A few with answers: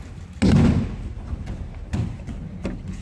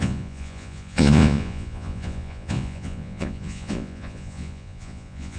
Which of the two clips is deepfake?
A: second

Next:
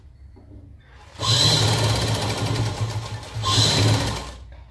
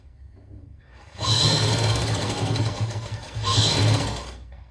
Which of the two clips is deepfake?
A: second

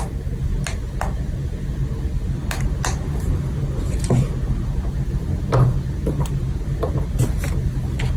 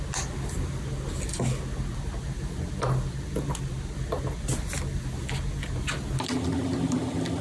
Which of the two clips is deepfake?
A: first